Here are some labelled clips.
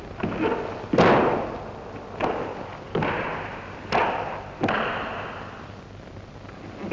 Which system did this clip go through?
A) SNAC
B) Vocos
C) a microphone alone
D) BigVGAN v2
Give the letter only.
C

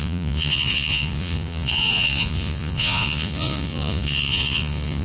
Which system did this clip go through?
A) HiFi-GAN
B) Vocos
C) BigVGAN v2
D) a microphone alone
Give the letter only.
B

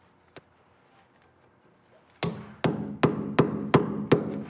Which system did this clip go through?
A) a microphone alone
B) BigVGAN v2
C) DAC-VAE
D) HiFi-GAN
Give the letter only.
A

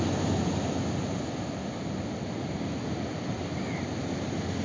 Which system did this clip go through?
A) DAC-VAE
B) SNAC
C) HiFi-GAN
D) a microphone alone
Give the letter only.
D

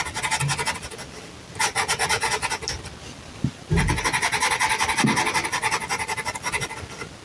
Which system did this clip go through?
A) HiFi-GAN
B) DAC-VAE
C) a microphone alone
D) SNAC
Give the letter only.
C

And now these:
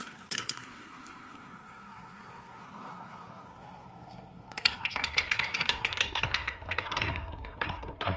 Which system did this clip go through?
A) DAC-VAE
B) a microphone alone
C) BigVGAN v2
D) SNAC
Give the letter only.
D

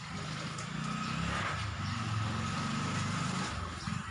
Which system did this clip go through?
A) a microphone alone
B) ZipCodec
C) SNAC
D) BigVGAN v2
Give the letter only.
A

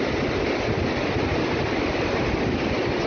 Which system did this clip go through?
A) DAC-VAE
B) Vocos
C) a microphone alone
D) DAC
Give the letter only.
C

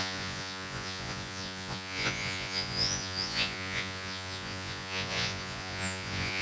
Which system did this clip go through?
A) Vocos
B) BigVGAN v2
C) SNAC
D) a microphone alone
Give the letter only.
A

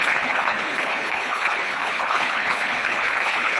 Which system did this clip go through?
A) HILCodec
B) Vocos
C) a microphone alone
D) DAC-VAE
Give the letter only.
A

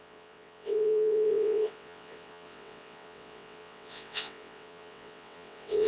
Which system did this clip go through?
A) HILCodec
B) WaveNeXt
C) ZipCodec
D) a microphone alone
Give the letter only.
B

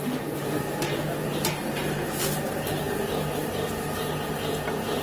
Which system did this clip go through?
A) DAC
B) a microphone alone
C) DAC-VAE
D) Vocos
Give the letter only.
B